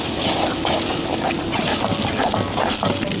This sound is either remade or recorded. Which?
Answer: recorded